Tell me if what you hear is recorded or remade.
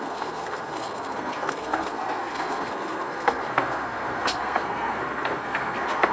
remade